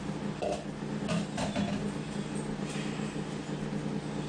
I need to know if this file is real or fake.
real